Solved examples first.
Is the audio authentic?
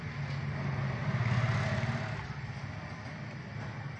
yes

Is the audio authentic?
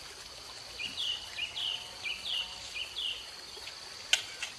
yes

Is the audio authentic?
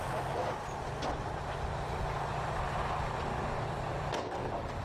yes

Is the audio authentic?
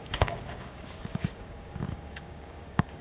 no